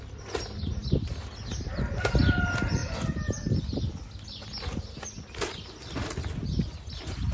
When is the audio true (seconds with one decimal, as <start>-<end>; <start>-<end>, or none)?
0.0-7.3